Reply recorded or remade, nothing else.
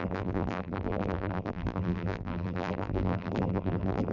remade